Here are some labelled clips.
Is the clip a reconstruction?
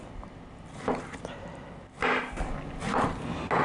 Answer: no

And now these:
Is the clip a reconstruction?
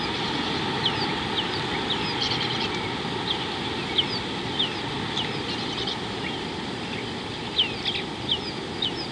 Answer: no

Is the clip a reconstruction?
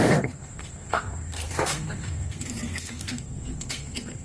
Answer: yes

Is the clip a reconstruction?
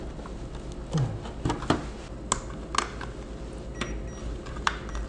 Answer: no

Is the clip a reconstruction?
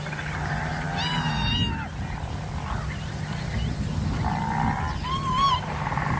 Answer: no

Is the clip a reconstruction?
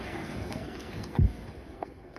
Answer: yes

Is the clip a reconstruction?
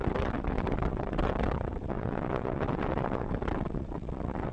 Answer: yes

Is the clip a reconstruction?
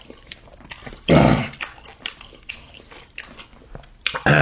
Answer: no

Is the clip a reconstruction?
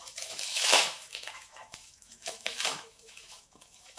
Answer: yes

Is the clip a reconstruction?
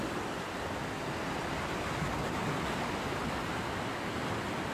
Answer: no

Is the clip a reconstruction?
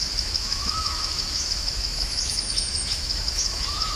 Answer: yes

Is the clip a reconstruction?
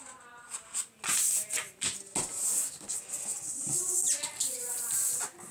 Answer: no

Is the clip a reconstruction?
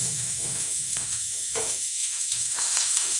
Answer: yes